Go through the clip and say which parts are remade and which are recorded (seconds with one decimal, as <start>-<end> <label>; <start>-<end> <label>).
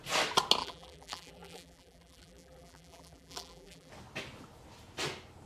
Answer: 0.0-0.6 recorded; 0.6-3.9 remade; 3.9-5.5 recorded